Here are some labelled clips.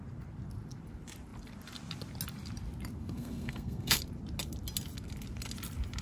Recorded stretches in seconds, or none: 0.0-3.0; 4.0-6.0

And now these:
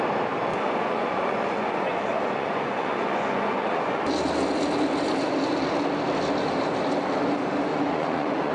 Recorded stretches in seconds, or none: 0.0-0.5; 4.0-7.7

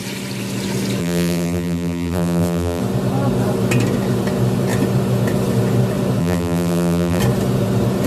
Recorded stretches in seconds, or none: 0.0-1.0; 2.8-6.2; 7.2-8.1

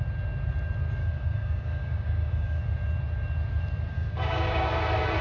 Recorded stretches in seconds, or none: 0.0-1.0; 2.6-3.9; 4.7-5.2

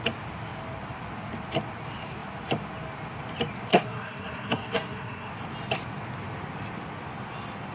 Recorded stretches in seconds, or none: 0.0-3.7; 5.3-7.7

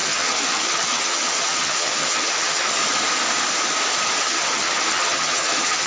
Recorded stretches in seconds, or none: 2.8-4.2

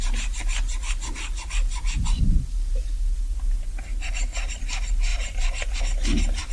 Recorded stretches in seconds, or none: 0.0-5.1; 5.8-6.5

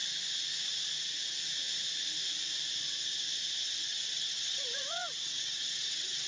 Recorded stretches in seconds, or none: 0.0-3.8